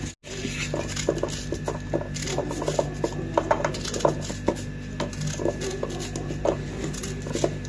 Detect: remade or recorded recorded